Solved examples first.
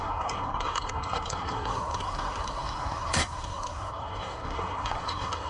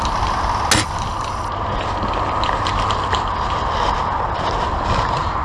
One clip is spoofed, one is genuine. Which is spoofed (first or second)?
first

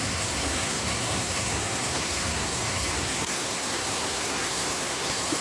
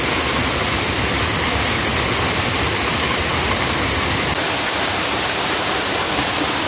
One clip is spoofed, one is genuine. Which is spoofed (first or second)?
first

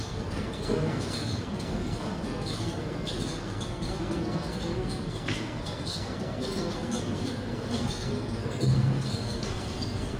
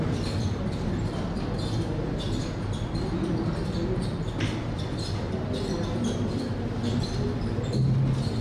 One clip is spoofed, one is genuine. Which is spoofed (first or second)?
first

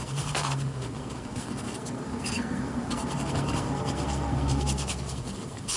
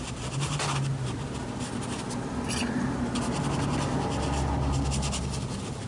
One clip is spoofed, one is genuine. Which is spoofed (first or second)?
first